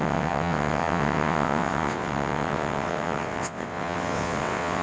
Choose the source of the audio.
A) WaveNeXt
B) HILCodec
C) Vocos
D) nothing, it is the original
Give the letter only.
A